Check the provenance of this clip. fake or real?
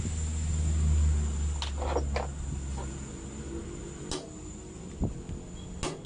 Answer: real